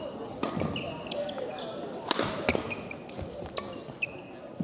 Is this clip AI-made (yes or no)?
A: no